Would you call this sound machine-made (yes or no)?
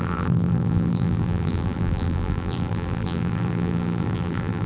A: yes